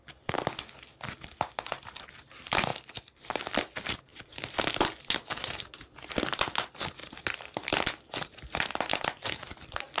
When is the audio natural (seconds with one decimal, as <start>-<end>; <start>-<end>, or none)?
0.0-10.0